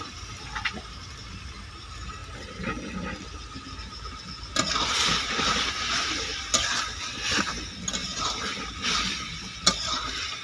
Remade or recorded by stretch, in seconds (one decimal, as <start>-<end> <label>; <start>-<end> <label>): 0.0-1.0 recorded; 1.0-1.7 remade; 1.7-8.0 recorded; 8.0-8.7 remade; 8.7-10.4 recorded